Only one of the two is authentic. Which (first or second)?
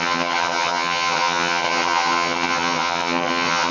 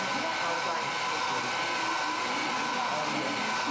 second